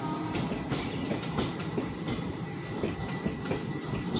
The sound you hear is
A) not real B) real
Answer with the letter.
B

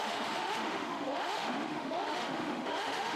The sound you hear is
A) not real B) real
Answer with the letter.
A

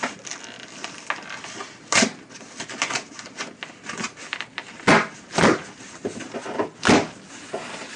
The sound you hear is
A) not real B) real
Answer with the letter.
B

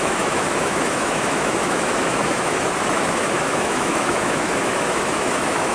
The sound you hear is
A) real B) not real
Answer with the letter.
B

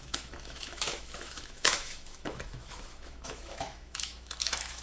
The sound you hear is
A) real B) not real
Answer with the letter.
B